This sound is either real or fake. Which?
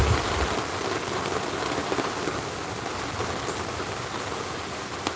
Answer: real